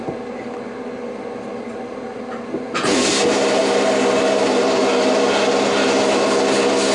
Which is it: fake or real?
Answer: real